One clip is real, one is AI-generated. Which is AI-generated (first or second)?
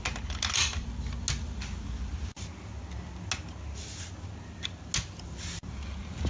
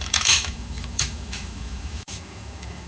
second